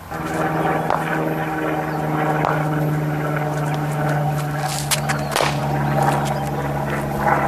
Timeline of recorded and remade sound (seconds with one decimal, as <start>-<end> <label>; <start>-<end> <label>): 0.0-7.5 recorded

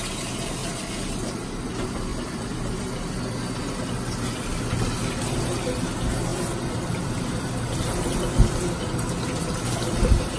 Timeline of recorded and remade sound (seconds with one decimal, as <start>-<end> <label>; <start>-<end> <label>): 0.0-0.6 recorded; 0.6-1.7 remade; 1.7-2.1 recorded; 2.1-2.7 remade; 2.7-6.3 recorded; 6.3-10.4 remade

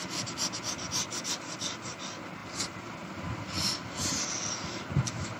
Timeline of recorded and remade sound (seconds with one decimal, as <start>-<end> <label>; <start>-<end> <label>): 0.0-2.4 recorded; 2.4-4.8 remade; 4.8-5.4 recorded

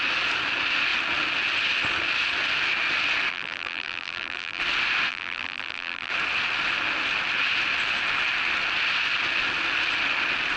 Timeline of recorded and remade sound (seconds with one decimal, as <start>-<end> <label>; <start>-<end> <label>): 0.0-3.3 recorded; 3.3-4.6 remade; 4.6-5.1 recorded; 5.1-6.1 remade; 6.1-10.6 recorded

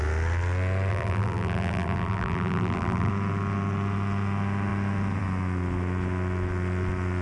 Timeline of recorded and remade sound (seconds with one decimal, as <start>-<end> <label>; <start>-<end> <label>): 0.0-0.9 recorded; 0.9-3.1 remade; 3.1-7.2 recorded